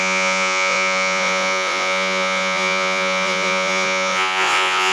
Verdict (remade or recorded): remade